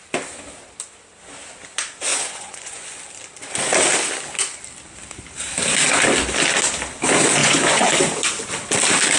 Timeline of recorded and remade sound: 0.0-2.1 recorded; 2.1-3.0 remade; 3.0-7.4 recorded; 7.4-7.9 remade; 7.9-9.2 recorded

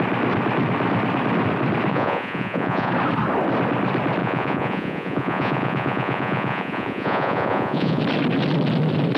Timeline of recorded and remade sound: 0.0-1.9 recorded; 1.9-2.9 remade; 2.9-4.2 recorded; 4.2-8.0 remade; 8.0-9.2 recorded

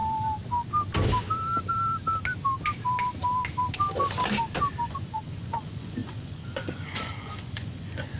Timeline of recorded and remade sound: 0.0-4.9 recorded; 4.9-8.2 remade

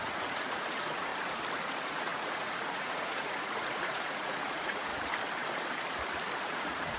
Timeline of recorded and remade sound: 0.0-1.1 remade; 1.1-1.7 recorded; 1.7-4.9 remade; 4.9-6.4 recorded; 6.4-7.0 remade

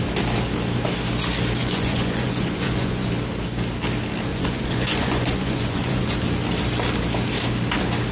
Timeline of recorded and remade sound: 0.0-1.6 recorded; 1.6-3.1 remade; 3.1-4.3 recorded; 4.3-6.0 remade; 6.0-8.1 recorded

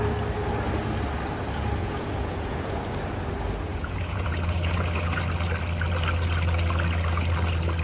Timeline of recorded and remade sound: 0.0-1.8 recorded; 1.8-2.8 remade; 2.8-3.7 recorded; 3.7-5.2 remade; 5.2-7.8 recorded